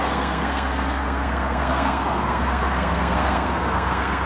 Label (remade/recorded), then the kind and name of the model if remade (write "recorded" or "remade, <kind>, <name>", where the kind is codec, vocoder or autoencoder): remade, codec, SNAC